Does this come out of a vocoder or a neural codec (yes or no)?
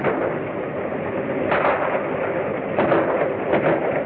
no